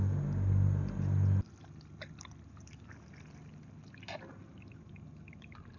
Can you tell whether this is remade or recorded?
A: recorded